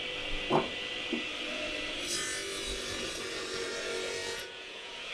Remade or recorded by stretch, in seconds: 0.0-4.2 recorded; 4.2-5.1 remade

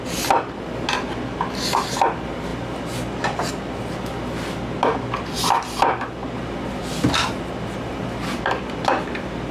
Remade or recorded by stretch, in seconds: 0.0-9.5 recorded

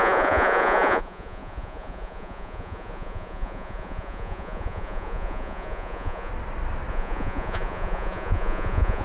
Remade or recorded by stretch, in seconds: 0.0-6.3 remade; 6.3-6.9 recorded; 6.9-9.0 remade

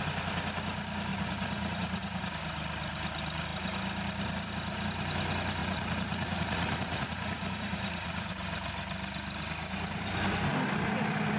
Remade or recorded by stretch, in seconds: 0.0-1.1 recorded; 1.1-2.2 remade; 2.2-5.6 recorded; 5.6-8.3 remade; 8.3-11.4 recorded

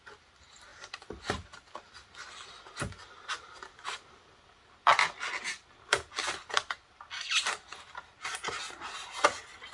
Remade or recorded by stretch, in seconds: 0.0-9.7 recorded

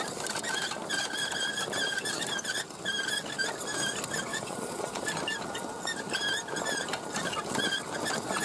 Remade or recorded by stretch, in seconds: 0.0-4.3 recorded; 4.3-5.1 remade; 5.1-8.4 recorded